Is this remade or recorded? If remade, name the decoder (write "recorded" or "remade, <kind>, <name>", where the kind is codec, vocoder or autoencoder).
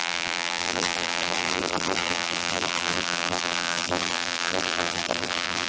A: remade, vocoder, BigVGAN v2